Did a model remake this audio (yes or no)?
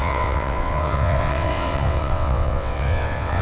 yes